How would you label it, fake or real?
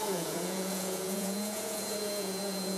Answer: fake